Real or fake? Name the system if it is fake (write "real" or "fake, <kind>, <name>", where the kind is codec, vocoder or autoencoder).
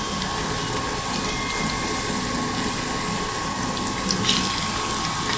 real